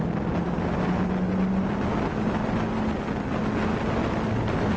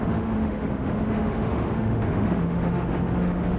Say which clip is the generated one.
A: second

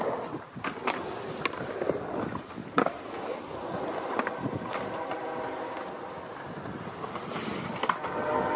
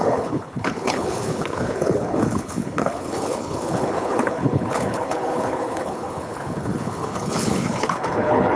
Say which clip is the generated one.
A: second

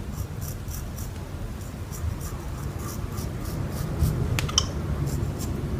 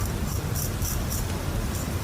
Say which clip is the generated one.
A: second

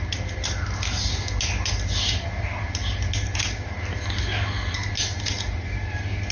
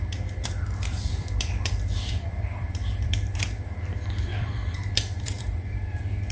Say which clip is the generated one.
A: second